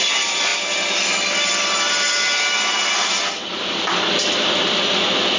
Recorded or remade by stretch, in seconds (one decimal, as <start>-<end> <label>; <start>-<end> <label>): 0.0-5.4 recorded